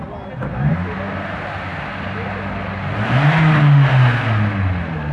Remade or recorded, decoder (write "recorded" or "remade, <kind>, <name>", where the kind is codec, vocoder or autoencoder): recorded